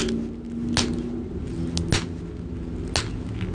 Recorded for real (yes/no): yes